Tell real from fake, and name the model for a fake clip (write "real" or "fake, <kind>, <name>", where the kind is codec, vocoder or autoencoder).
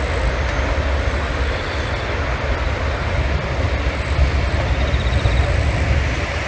real